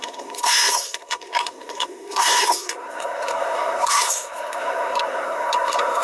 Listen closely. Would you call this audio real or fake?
fake